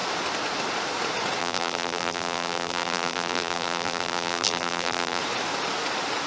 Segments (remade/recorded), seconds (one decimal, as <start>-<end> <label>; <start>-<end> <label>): 0.0-1.4 recorded; 1.4-5.2 remade; 5.2-6.3 recorded